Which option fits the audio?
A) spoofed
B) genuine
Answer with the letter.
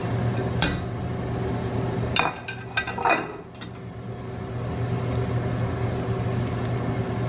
B